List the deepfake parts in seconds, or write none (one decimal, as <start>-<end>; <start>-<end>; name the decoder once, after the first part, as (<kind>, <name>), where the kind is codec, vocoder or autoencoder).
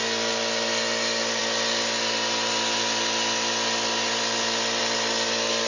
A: none